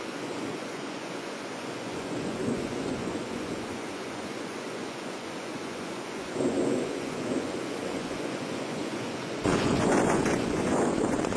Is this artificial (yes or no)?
yes